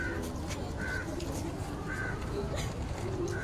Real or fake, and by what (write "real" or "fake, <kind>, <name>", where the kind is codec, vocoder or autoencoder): real